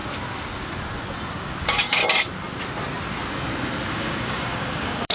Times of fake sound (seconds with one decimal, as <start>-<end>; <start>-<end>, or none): 1.3-2.0; 3.9-5.1